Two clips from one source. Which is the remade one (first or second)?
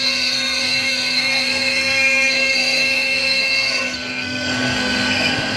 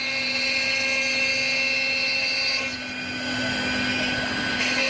first